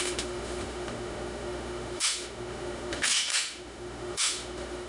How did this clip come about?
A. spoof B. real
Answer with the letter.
A